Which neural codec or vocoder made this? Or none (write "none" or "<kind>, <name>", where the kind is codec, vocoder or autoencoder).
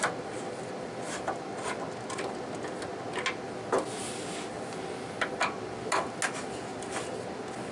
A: none